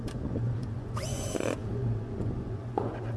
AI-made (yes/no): yes